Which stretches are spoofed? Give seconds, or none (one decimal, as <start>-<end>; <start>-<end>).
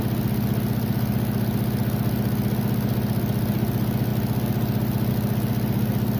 none